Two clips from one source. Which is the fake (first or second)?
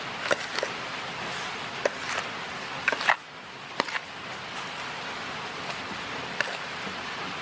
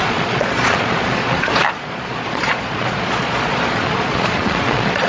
second